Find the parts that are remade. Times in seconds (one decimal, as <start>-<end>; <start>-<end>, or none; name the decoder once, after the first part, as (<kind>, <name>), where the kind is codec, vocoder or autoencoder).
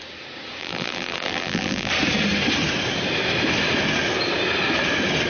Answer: 0.6-1.9 (vocoder, BigVGAN v2)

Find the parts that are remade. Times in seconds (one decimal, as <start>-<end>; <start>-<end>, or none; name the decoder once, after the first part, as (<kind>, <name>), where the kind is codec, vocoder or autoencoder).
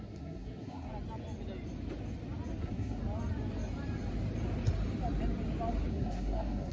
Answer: 0.0-0.9 (codec, SNAC); 2.6-3.0; 5.9-6.7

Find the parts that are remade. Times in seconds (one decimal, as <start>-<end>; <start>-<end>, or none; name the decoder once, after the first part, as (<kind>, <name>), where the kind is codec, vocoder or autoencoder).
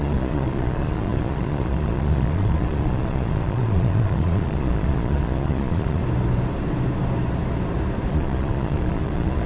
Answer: 0.0-6.0 (vocoder, Vocos); 8.1-9.5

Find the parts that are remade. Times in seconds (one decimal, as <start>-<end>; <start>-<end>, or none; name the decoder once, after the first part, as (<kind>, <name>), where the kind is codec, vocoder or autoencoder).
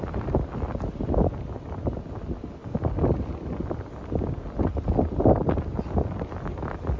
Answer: none